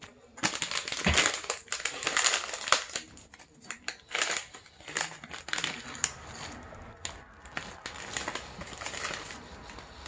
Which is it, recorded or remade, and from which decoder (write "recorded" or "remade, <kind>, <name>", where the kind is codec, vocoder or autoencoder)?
recorded